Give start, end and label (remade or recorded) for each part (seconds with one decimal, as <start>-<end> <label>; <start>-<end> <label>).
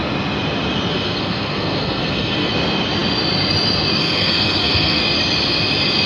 0.0-0.9 recorded; 0.9-2.5 remade; 2.5-4.0 recorded; 4.0-5.0 remade; 5.0-6.1 recorded